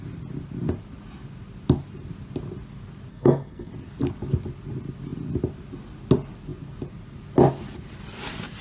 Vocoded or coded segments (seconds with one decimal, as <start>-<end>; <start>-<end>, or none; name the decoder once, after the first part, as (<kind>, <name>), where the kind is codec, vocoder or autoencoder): 3.1-3.7 (codec, SNAC)